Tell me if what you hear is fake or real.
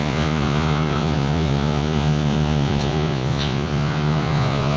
fake